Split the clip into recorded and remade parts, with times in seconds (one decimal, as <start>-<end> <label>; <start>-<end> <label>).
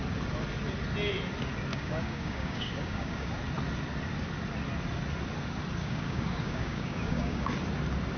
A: 0.0-1.7 recorded; 1.7-3.3 remade; 3.3-5.8 recorded; 5.8-7.5 remade; 7.5-8.2 recorded